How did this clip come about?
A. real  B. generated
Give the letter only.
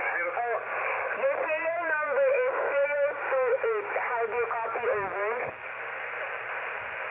A